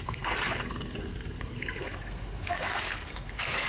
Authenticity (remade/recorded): remade